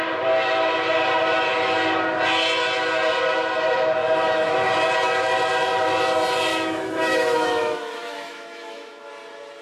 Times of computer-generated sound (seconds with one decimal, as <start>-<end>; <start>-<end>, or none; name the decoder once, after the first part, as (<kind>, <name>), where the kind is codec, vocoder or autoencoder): 4.0-4.5 (autoencoder, DAC-VAE); 6.5-9.1